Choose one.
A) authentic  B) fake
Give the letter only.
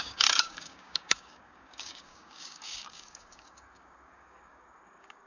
B